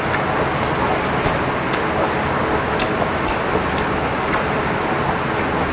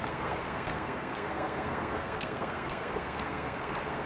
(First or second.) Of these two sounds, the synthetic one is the second